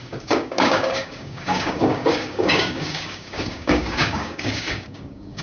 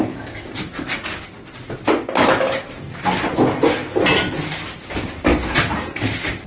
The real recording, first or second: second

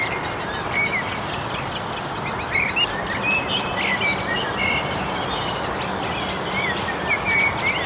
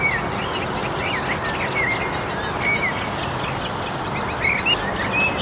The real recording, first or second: second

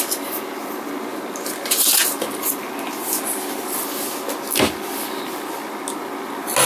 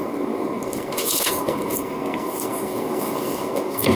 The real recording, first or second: first